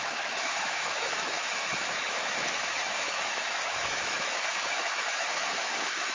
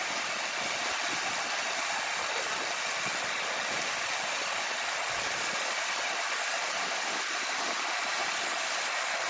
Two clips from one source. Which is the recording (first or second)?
second